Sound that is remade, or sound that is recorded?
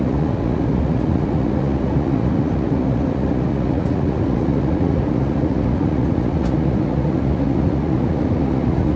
remade